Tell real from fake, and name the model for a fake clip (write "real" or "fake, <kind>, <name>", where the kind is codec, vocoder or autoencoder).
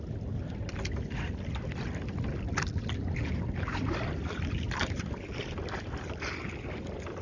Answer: real